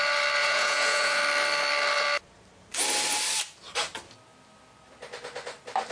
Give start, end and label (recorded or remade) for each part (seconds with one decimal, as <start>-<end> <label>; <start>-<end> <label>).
0.0-0.4 recorded; 0.4-1.2 remade; 1.2-5.9 recorded